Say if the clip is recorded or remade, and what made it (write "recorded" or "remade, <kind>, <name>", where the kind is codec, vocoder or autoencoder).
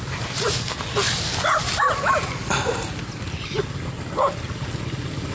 recorded